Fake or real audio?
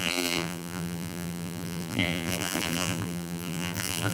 fake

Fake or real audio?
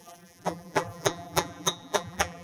fake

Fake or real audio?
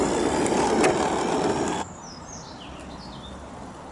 real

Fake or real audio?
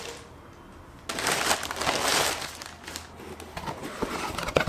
real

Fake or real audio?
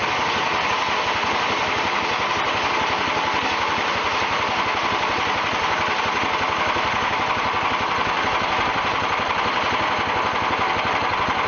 real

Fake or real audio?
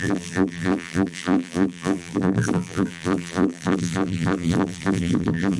fake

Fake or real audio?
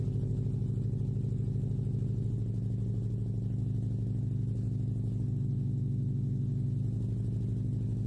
real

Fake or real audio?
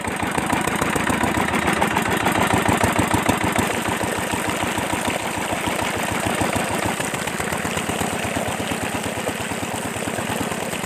real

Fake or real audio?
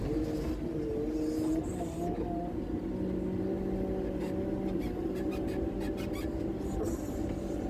real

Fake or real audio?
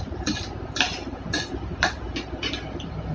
fake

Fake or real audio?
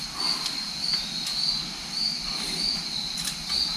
real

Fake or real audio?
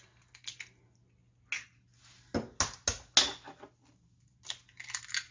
real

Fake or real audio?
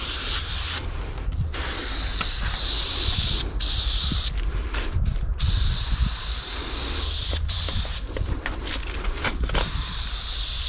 fake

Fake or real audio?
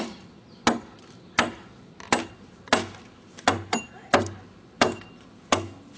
real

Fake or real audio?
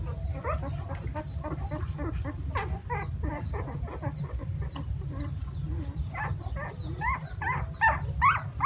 real